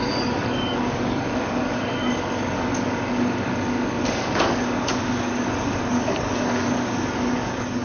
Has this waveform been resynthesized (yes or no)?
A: yes